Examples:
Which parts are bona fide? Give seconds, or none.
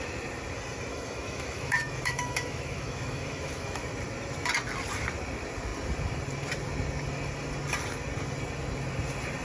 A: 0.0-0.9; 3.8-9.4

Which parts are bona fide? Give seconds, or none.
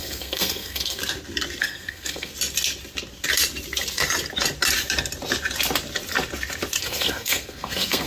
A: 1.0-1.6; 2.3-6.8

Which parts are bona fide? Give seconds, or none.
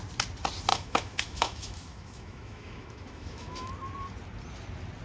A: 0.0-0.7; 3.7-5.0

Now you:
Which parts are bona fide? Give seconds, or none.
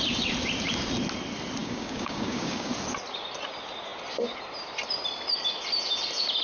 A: 0.0-1.6; 2.7-6.4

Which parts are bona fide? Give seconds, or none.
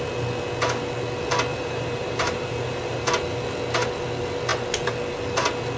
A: 0.0-1.5; 3.1-5.8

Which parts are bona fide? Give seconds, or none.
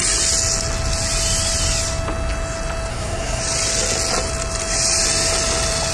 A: 0.0-2.9; 3.4-5.9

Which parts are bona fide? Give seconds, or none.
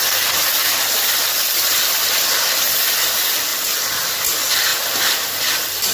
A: 0.0-1.6; 2.5-3.5; 4.2-4.7; 5.5-5.9